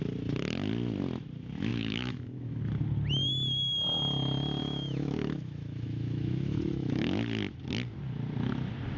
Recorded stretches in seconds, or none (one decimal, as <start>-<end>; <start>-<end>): 0.0-1.7; 2.6-4.6; 7.1-9.0

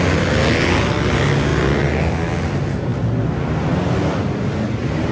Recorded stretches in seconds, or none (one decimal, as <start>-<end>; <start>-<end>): 0.0-5.1

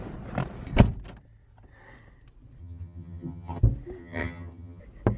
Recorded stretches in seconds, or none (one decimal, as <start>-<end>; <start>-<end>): 0.0-2.6; 3.6-4.0; 4.8-5.2

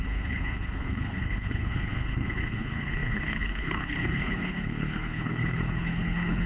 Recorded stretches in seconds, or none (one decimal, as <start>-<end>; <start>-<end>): none

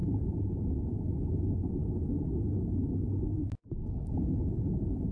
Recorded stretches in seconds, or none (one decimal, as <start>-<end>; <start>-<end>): 1.0-4.4